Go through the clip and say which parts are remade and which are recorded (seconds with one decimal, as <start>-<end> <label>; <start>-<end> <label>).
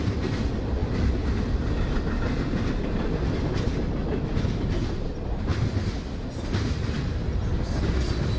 0.0-8.4 recorded